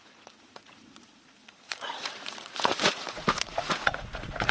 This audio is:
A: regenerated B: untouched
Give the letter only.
A